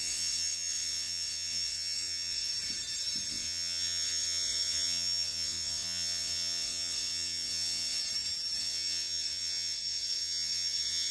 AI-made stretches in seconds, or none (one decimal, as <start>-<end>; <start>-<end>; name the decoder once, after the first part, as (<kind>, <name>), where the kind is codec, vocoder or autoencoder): 0.0-2.5 (vocoder, WaveNeXt); 3.3-8.0; 8.6-11.1